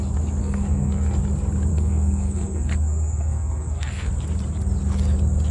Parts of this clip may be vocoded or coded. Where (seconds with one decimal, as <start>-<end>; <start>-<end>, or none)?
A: 0.4-1.2; 1.7-4.1